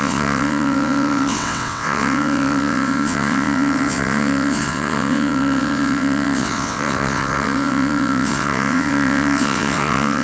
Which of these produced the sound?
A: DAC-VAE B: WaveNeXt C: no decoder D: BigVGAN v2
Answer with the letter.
B